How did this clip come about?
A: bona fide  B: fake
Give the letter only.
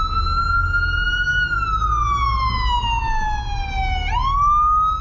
A